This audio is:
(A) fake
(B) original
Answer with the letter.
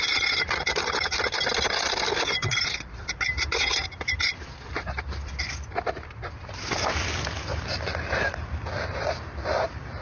B